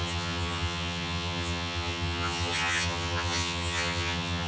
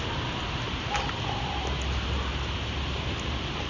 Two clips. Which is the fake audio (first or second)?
first